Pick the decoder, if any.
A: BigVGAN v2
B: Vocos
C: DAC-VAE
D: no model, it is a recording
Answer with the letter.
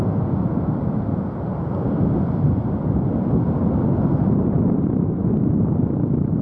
D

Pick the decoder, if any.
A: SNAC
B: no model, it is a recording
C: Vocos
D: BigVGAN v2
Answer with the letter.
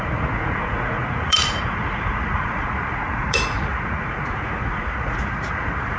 C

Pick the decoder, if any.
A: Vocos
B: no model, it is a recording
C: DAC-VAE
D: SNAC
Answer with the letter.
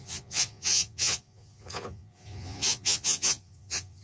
A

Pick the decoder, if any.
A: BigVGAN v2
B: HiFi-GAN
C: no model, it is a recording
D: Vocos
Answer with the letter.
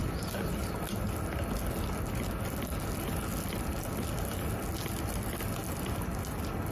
C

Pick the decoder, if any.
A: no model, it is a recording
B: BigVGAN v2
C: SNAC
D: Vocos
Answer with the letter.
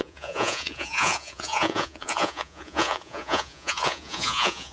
D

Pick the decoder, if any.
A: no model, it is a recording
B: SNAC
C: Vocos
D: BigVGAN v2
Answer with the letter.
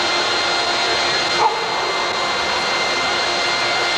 A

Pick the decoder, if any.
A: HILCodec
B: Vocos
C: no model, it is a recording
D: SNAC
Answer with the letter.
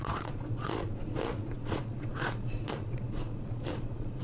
B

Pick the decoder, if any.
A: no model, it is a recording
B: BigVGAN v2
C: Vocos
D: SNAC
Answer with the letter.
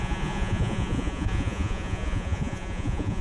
C